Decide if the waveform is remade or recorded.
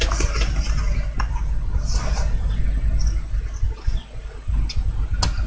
recorded